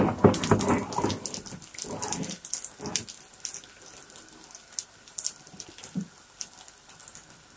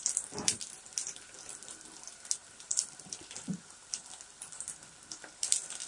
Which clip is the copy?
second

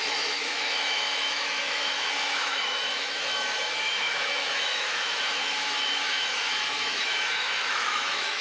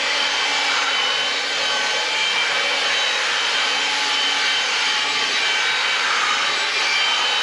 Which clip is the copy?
first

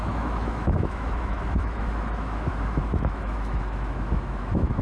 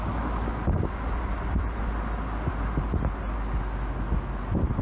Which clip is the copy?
first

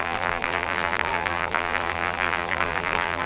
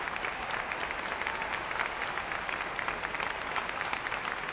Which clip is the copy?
first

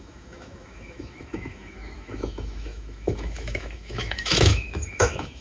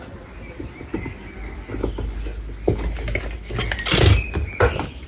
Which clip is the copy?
first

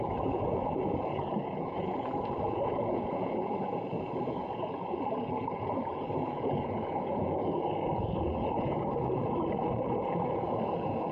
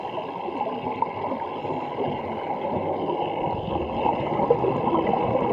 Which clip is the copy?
first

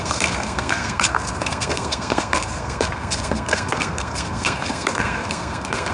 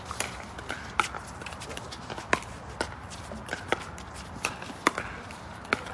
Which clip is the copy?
first